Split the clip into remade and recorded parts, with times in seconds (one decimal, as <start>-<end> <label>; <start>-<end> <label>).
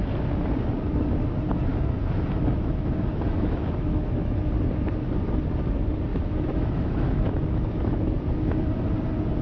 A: 0.0-1.7 recorded; 1.7-4.5 remade; 4.5-6.1 recorded; 6.1-8.1 remade; 8.1-9.4 recorded